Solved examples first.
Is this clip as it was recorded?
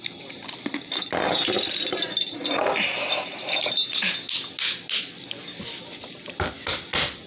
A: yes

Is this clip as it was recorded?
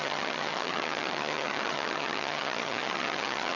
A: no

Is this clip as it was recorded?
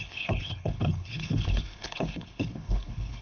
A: no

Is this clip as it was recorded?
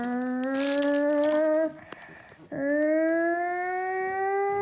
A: yes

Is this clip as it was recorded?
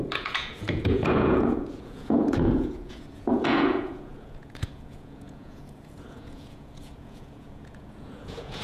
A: no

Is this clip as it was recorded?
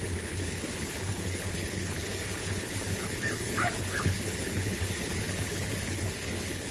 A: no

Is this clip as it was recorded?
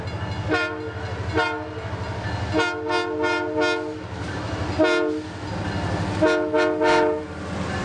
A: yes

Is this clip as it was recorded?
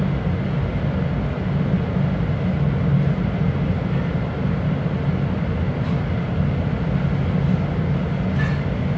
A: yes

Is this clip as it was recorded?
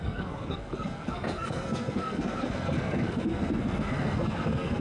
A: no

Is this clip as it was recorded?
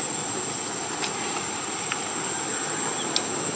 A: yes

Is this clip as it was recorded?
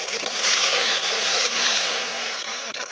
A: no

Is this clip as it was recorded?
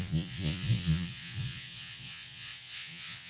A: no